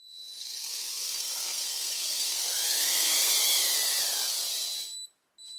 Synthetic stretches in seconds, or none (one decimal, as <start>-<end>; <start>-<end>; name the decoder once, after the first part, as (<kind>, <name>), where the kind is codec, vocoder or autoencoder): 0.4-3.3 (codec, SNAC)